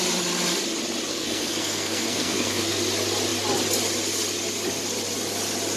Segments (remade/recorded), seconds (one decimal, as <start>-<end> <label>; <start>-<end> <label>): 0.0-1.1 recorded; 1.1-2.8 remade; 2.8-5.8 recorded